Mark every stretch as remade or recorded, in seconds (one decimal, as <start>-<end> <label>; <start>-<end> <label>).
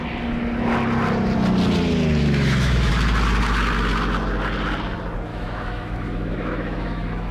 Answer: 0.0-2.2 recorded; 2.2-2.9 remade; 2.9-5.3 recorded; 5.3-7.3 remade